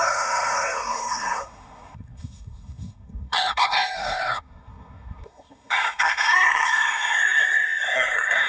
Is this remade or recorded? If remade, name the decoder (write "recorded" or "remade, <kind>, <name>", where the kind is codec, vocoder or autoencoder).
remade, codec, SNAC